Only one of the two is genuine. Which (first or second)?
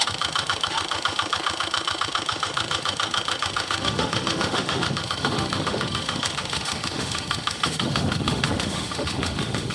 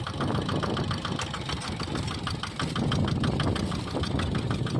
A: second